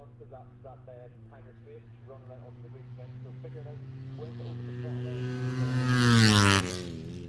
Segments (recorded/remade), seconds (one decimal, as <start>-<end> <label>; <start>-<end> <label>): 0.0-7.3 recorded